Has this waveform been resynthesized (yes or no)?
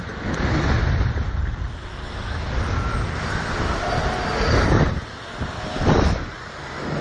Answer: no